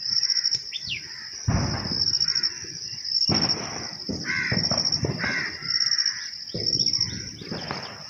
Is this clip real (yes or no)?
yes